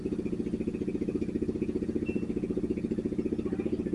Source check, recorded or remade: recorded